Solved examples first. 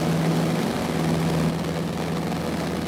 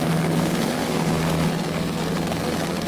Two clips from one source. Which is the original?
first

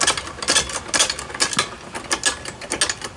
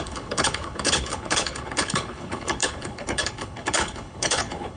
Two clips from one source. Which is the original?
first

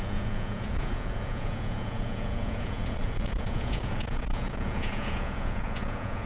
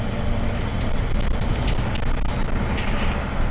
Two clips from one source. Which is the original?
second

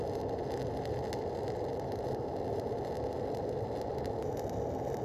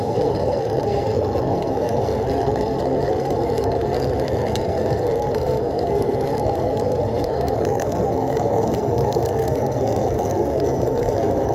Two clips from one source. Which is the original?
first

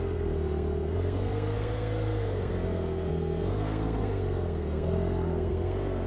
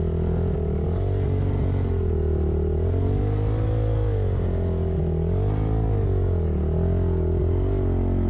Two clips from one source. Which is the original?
second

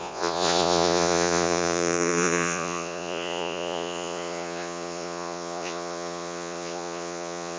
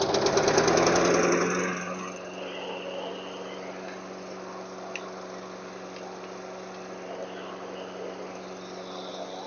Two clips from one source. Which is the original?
second